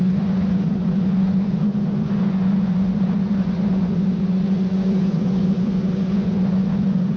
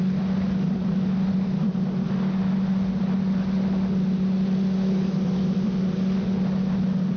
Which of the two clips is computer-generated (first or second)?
first